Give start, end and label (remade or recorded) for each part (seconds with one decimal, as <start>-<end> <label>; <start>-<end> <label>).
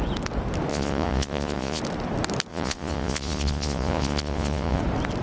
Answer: 0.0-0.7 recorded; 0.7-1.8 remade; 1.8-2.5 recorded; 2.5-4.8 remade; 4.8-5.2 recorded